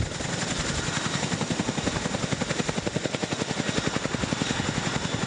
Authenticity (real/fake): real